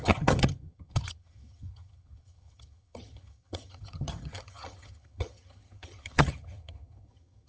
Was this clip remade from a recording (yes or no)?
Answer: yes